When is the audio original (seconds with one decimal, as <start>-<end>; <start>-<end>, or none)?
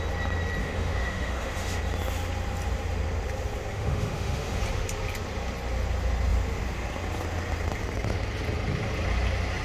0.0-0.6; 1.8-3.7; 4.6-9.6